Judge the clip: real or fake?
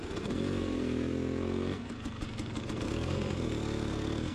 fake